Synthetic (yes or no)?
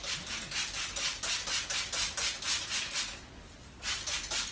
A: no